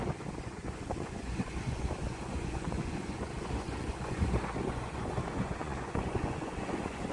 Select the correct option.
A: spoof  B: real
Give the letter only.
A